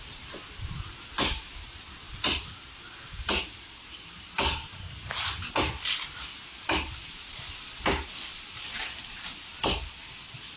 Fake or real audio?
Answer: real